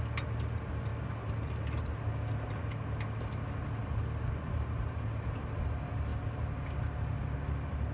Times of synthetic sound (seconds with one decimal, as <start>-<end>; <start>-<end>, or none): none